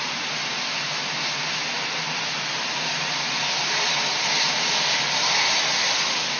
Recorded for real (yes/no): yes